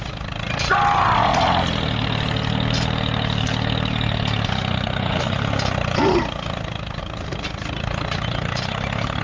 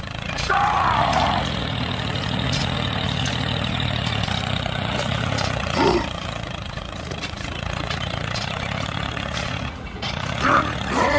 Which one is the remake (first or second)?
second